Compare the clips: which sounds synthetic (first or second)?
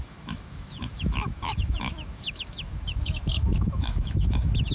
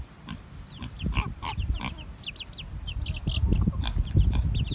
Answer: first